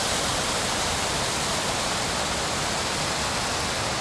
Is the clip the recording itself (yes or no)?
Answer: yes